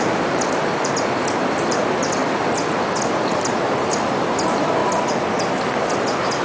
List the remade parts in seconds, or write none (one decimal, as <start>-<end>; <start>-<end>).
0.0-2.2; 3.1-4.8; 6.0-6.4